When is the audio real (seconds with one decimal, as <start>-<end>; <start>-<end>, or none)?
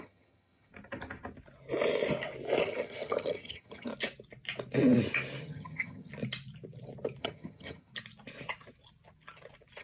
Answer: 0.7-2.6; 3.9-5.4; 6.1-7.2; 7.9-9.8